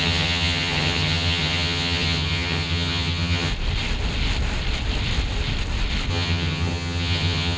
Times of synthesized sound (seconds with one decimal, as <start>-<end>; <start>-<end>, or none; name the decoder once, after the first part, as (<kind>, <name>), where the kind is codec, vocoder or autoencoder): 0.0-3.5 (vocoder, HiFi-GAN); 6.1-7.6